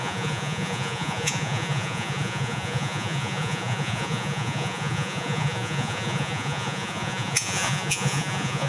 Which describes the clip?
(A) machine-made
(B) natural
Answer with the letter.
A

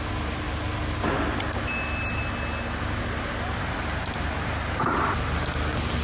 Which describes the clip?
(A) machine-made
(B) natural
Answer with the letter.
B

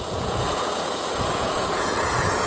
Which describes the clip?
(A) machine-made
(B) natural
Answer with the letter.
A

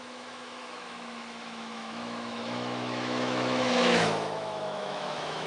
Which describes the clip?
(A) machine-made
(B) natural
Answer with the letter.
A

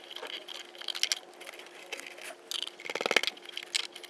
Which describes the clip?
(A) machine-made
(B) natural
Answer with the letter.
B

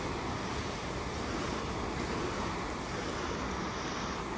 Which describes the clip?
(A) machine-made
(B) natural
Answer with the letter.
B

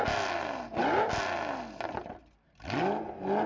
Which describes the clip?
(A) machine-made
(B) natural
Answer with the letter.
B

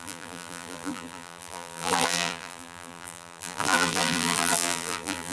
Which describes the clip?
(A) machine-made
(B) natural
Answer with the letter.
A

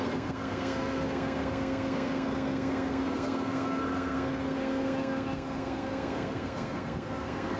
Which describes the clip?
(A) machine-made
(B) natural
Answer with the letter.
A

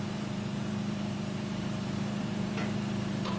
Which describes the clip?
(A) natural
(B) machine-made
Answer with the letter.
B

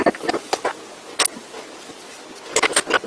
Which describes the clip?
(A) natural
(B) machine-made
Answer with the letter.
A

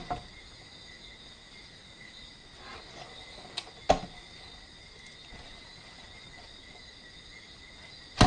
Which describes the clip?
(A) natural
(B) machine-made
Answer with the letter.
A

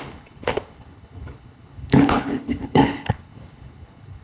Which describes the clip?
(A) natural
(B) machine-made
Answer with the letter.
B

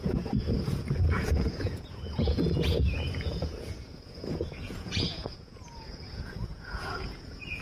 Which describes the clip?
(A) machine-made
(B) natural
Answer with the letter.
A